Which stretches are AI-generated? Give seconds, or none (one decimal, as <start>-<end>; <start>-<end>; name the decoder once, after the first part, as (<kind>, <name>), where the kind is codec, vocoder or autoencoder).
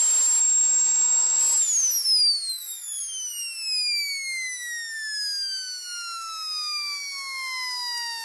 0.4-1.4 (autoencoder, DAC-VAE); 2.5-3.0